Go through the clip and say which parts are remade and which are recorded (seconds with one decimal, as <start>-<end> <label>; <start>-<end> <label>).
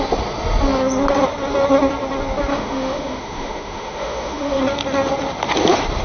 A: 0.0-2.5 recorded; 2.5-4.6 remade; 4.6-6.0 recorded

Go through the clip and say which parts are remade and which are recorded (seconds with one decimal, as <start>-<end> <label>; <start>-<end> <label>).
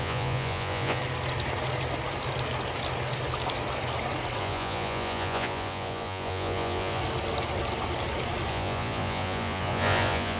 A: 0.0-1.0 remade; 1.0-4.4 recorded; 4.4-7.0 remade; 7.0-8.5 recorded; 8.5-10.4 remade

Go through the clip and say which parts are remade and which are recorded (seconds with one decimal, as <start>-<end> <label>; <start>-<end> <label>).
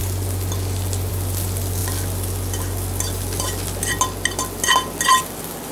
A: 0.0-5.7 recorded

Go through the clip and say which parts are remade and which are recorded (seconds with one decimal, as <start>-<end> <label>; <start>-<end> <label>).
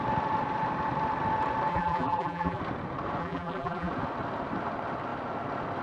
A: 0.0-1.7 recorded; 1.7-2.6 remade; 2.6-3.2 recorded; 3.2-3.9 remade; 3.9-5.8 recorded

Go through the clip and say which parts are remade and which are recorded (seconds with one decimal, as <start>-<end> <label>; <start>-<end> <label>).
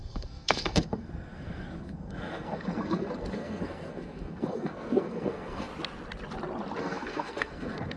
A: 0.0-5.7 remade; 5.7-6.8 recorded; 6.8-8.0 remade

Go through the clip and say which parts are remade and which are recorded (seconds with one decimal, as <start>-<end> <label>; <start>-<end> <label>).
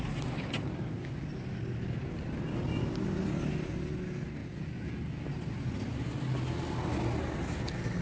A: 0.0-4.4 recorded; 4.4-5.2 remade; 5.2-8.0 recorded